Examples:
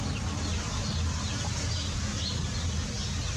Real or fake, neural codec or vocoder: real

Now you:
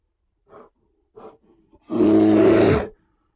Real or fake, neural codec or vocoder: fake, vocoder, BigVGAN v2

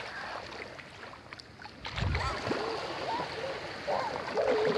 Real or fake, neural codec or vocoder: real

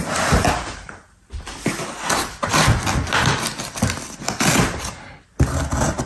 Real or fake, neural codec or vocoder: real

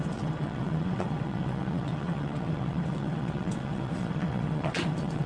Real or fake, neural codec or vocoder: fake, vocoder, WaveNeXt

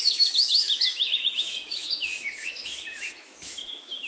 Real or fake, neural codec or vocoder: fake, autoencoder, DAC-VAE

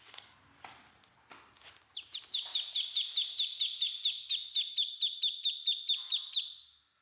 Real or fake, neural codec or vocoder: real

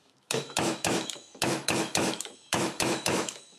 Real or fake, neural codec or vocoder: fake, autoencoder, DAC-VAE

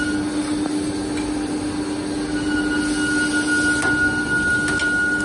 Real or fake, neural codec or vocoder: real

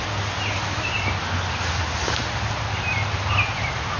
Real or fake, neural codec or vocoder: real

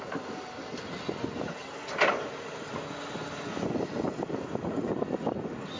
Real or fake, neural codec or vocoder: real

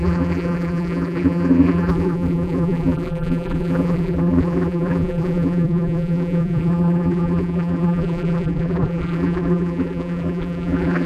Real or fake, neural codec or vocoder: fake, vocoder, BigVGAN v2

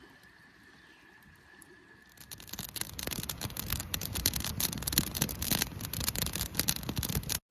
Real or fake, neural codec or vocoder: real